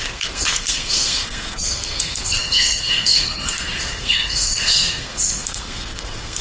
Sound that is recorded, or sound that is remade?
remade